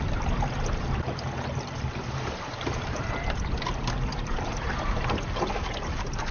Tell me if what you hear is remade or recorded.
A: remade